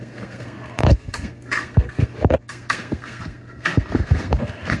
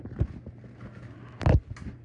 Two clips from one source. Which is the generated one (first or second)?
first